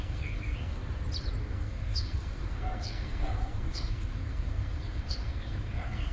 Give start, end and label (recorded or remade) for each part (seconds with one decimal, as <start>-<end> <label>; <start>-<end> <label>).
0.0-0.8 remade; 0.8-1.5 recorded; 1.5-6.1 remade